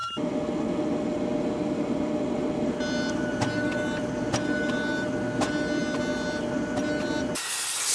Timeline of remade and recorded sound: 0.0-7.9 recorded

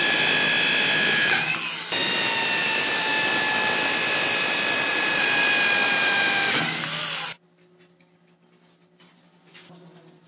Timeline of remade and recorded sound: 0.0-10.3 recorded

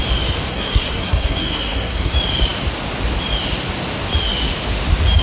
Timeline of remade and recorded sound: 0.0-0.5 recorded; 0.5-2.1 remade; 2.1-5.2 recorded